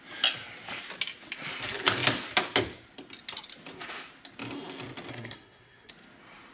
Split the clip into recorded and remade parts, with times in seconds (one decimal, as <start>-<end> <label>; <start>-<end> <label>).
0.0-5.1 recorded; 5.1-5.9 remade; 5.9-6.5 recorded